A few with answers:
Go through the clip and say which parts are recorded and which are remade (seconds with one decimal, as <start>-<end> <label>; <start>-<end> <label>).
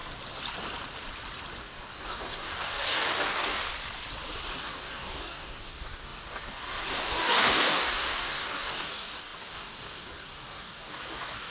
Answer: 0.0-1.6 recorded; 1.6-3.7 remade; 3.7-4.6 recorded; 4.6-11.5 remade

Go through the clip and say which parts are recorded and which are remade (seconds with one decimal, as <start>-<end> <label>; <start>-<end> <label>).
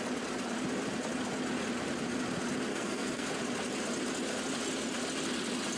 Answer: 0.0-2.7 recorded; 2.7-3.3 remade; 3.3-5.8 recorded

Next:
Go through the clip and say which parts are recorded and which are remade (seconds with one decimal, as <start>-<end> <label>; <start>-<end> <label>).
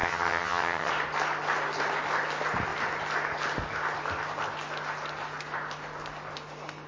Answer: 0.0-0.9 remade; 0.9-6.9 recorded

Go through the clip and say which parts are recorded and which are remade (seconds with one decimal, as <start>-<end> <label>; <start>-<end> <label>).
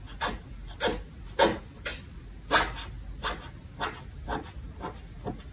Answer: 0.0-5.5 recorded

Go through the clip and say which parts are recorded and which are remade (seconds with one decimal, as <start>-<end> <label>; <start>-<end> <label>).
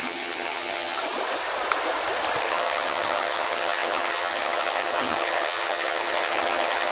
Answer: 0.0-1.0 remade; 1.0-2.4 recorded; 2.4-6.9 remade